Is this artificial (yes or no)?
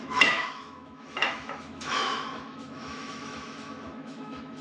yes